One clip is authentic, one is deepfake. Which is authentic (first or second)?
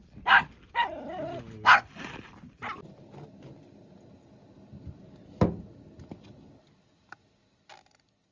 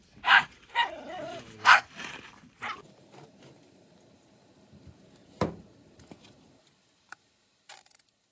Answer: first